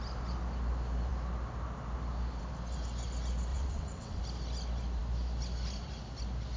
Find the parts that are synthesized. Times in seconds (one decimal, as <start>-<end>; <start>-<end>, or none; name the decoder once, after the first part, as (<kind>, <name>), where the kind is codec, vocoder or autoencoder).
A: 3.5-4.2 (vocoder, WaveNeXt)